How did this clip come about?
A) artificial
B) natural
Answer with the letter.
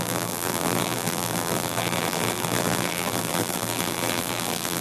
A